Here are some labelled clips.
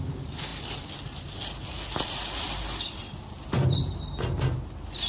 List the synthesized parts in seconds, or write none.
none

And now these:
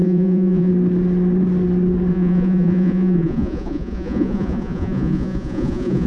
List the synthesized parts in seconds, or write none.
0.0-0.7 (vocoder, Vocos); 2.1-6.1

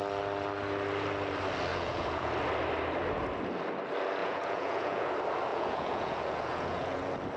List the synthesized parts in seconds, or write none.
1.7-2.3 (vocoder, Vocos); 4.2-5.1; 5.5-7.0

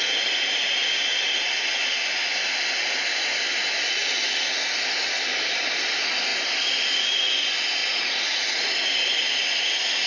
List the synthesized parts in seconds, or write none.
7.8-8.6 (vocoder, Vocos)

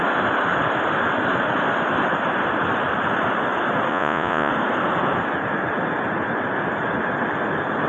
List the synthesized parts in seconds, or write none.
3.9-4.5 (vocoder, Vocos)

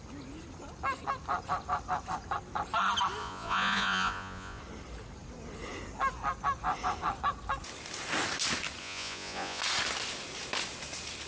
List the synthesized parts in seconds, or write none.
3.2-4.6 (vocoder, Vocos); 8.8-9.6